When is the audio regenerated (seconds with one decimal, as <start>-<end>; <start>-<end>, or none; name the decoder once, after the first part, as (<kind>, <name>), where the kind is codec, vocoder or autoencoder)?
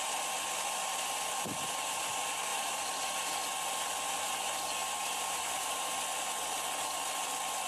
2.5-3.2 (vocoder, BigVGAN v2); 4.8-5.9